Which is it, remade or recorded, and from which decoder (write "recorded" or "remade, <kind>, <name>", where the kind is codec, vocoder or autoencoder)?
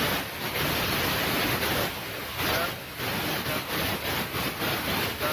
recorded